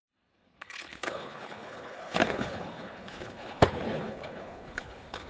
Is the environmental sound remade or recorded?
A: remade